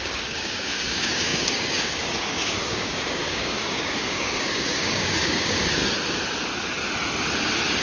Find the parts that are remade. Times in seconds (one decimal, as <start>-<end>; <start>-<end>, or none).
0.0-5.8